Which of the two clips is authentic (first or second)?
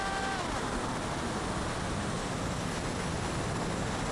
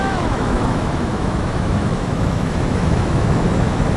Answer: first